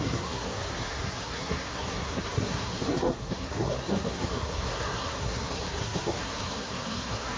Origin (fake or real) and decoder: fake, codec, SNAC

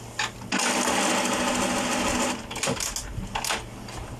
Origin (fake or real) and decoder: real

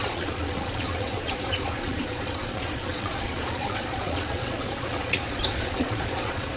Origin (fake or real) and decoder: fake, vocoder, Vocos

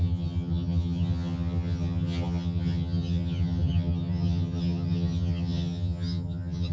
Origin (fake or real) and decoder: fake, vocoder, HiFi-GAN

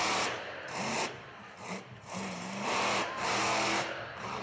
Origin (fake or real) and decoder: fake, vocoder, BigVGAN v2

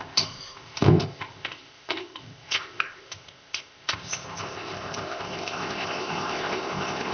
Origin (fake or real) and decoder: fake, codec, ZipCodec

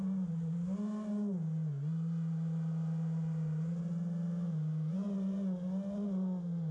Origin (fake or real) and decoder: real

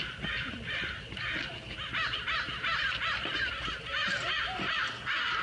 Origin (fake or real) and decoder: real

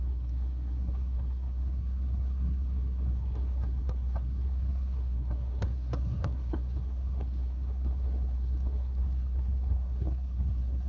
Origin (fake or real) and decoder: fake, codec, SNAC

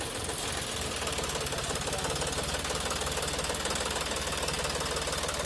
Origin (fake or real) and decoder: real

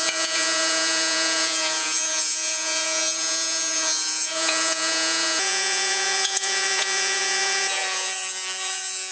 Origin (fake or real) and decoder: fake, vocoder, Vocos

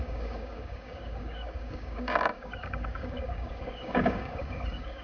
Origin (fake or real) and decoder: fake, codec, DAC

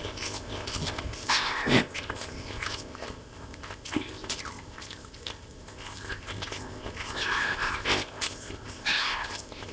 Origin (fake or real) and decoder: fake, codec, ZipCodec